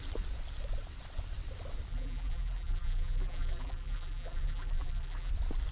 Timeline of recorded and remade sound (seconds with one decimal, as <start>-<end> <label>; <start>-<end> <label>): 0.0-1.9 recorded; 1.9-5.3 remade; 5.3-5.7 recorded